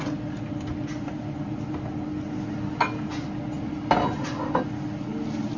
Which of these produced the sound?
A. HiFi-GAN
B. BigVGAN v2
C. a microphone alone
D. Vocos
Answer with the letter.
C